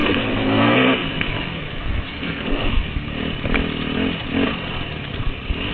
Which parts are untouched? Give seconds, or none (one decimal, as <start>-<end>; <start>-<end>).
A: 3.1-5.7